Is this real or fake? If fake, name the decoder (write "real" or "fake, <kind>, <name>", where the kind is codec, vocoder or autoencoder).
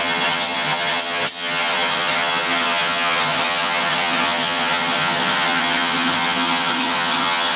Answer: fake, vocoder, HiFi-GAN